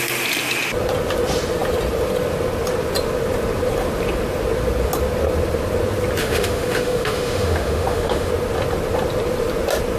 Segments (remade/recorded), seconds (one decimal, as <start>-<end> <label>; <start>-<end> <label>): 0.0-6.2 recorded; 6.2-8.3 remade; 8.3-10.0 recorded